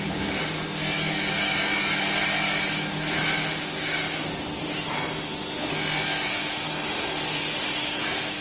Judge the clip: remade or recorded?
recorded